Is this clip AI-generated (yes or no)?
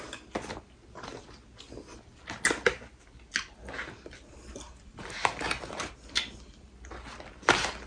no